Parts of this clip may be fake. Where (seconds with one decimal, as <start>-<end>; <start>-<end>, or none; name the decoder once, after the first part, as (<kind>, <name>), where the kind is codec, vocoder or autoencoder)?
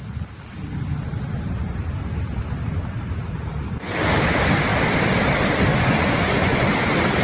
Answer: 5.7-6.7 (vocoder, Vocos)